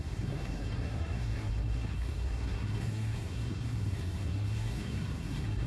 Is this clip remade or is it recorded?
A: remade